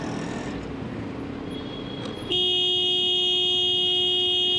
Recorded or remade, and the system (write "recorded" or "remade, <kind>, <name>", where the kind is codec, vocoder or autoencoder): recorded